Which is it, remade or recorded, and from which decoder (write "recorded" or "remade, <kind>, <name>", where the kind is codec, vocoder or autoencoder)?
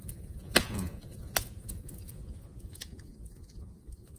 remade, vocoder, Vocos